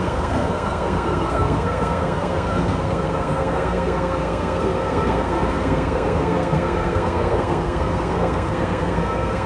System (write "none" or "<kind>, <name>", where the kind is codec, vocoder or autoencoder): codec, SNAC